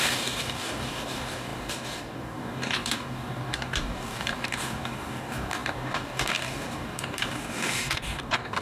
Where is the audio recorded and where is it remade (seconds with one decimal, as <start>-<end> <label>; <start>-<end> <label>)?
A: 0.0-8.6 remade